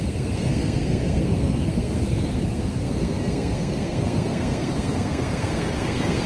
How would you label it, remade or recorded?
remade